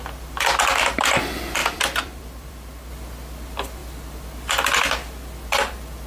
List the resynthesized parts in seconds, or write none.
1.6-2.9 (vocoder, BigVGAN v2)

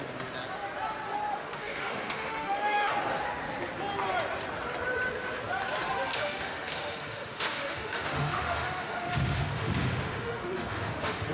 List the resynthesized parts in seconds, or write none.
1.3-2.9 (autoencoder, DAC-VAE); 6.1-11.3